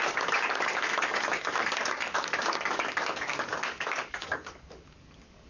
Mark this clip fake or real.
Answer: fake